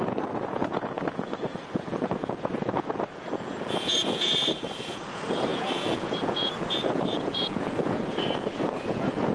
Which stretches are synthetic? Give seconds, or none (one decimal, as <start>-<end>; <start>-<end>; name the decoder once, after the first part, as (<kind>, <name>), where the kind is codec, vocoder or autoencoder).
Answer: 0.0-9.3 (vocoder, Vocos)